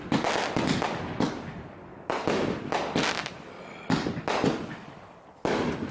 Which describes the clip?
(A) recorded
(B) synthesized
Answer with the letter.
A